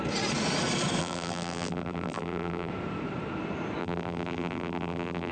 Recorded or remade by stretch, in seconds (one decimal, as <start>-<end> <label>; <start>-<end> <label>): 0.0-1.0 recorded; 1.0-2.7 remade; 2.7-3.8 recorded; 3.8-5.3 remade